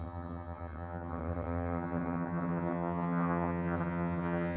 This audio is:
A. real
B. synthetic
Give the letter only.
B